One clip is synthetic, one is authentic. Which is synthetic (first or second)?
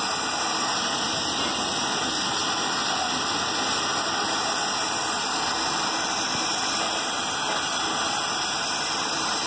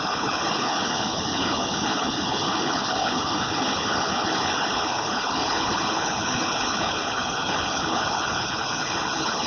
second